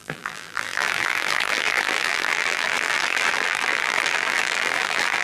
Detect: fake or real fake